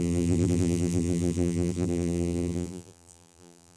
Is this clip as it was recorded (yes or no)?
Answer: no